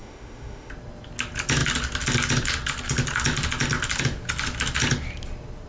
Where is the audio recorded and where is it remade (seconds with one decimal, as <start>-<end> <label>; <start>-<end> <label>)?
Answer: 0.0-0.7 remade; 0.7-5.7 recorded